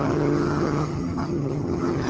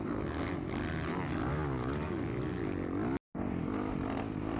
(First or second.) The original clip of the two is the second